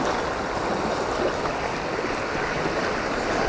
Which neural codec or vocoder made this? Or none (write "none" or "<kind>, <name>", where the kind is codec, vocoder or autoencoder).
vocoder, BigVGAN v2